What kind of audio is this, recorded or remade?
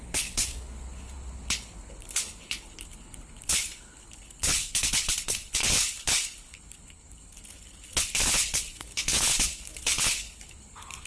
remade